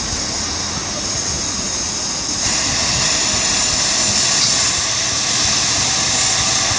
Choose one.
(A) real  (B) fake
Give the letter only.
A